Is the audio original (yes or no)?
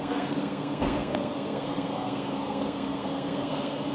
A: no